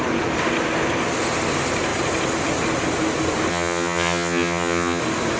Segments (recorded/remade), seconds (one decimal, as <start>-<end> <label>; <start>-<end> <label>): 0.0-3.5 recorded; 3.5-5.0 remade; 5.0-5.4 recorded